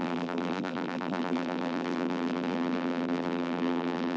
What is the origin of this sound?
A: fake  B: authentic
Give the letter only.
A